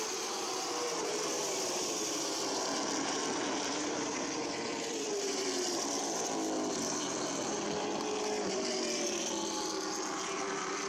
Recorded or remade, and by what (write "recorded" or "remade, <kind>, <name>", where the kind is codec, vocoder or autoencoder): remade, vocoder, BigVGAN v2